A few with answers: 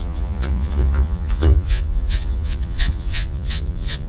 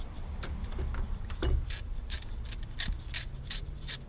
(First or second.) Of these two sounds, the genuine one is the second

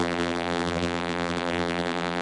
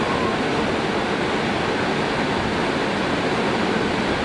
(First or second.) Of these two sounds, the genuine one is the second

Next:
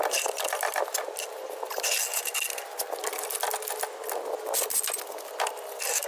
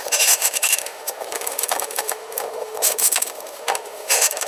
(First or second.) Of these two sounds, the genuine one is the first